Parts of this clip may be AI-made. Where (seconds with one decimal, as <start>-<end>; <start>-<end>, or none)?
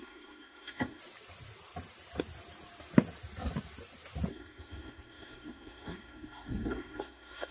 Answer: 0.0-1.0; 4.3-7.5